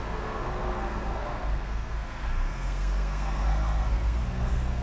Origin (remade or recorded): remade